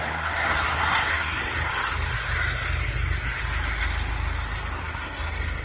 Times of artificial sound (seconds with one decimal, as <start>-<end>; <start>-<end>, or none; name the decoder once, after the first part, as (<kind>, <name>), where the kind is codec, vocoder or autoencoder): 0.0-1.4 (codec, SNAC); 4.8-5.6